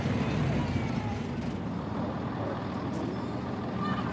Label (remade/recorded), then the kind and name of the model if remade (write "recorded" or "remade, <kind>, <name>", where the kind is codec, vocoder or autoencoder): recorded